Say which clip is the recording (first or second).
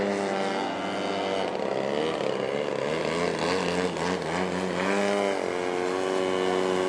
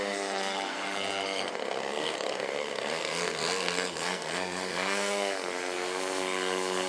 first